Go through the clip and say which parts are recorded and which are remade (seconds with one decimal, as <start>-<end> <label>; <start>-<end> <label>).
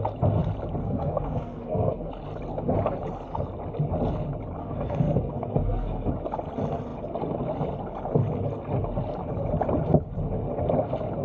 0.0-0.8 recorded; 0.8-2.1 remade; 2.1-4.6 recorded; 4.6-6.1 remade; 6.1-11.2 recorded